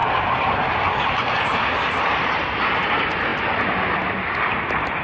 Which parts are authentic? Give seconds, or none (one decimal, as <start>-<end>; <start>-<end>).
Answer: 0.0-5.0